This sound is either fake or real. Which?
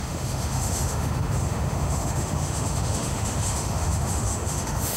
fake